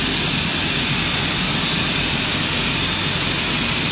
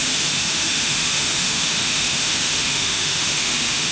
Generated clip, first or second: second